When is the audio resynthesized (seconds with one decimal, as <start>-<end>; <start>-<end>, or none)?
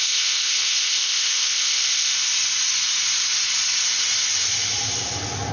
0.0-2.1